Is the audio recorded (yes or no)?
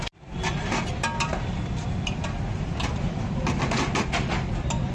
yes